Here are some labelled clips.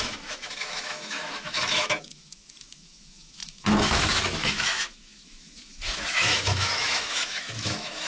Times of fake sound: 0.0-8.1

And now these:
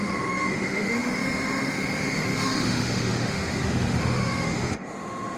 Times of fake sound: 0.0-5.4

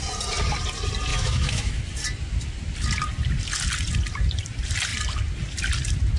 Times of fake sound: 1.1-1.8

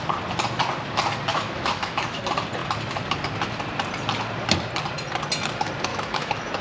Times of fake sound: 1.3-2.2; 5.9-6.6